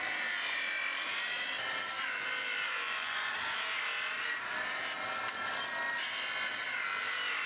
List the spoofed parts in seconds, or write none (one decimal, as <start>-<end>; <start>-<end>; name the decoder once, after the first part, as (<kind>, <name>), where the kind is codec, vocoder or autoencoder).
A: 2.7-3.3 (vocoder, Vocos)